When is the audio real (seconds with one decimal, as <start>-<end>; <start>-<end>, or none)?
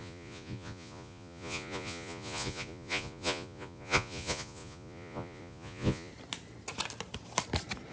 6.1-7.9